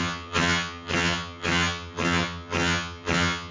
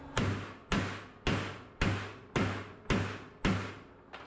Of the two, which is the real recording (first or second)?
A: second